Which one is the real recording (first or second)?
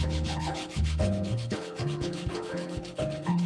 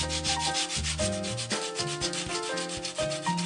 second